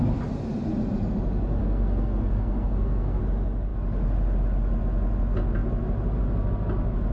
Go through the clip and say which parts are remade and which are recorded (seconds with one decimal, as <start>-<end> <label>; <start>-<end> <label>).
0.0-1.6 recorded; 1.6-3.2 remade; 3.2-7.1 recorded